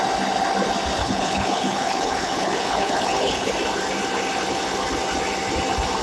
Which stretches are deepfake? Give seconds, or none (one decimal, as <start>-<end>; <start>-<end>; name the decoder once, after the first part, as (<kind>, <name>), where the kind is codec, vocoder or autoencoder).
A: 1.0-3.5 (codec, HILCodec)